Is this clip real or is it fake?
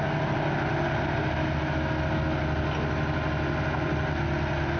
real